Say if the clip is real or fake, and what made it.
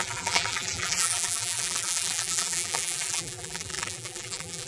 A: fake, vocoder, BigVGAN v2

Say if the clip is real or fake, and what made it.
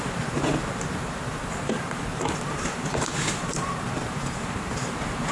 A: fake, vocoder, BigVGAN v2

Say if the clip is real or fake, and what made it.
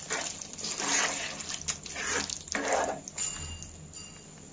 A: real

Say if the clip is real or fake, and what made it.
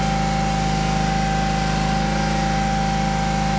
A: real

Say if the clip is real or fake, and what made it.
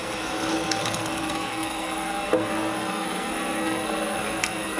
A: fake, codec, SNAC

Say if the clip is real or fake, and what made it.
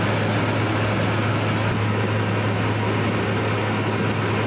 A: real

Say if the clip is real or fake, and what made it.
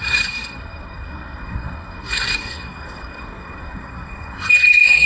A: fake, codec, SNAC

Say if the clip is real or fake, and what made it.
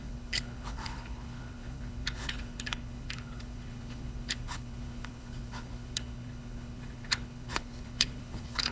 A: fake, codec, HILCodec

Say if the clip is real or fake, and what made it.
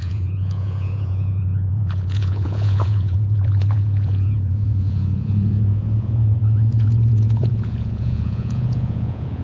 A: fake, vocoder, Vocos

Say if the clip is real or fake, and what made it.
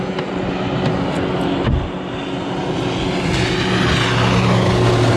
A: real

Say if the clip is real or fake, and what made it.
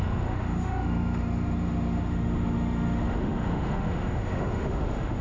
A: fake, autoencoder, DAC-VAE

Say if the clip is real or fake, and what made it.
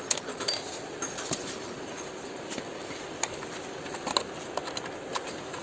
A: real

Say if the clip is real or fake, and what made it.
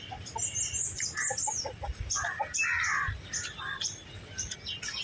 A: real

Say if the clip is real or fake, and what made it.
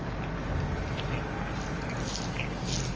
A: real